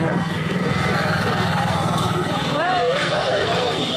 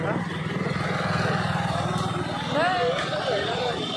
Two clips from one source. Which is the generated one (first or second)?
first